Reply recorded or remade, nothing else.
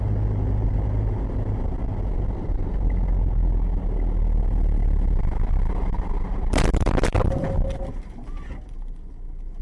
recorded